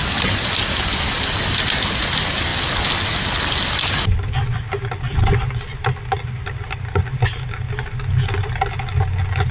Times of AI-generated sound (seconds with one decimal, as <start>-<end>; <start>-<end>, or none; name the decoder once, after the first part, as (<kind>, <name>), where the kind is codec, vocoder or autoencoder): none